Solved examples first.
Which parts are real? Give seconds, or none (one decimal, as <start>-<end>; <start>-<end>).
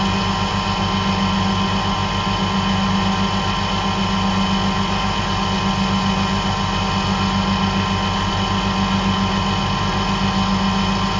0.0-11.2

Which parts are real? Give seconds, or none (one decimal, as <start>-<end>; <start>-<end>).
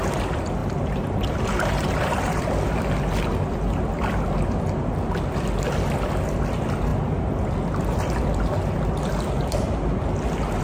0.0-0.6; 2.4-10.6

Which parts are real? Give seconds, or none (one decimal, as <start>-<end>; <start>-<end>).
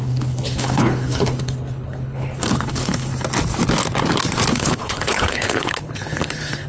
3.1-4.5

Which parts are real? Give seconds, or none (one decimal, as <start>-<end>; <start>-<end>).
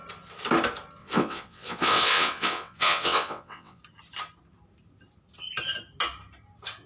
0.0-1.0; 3.8-6.9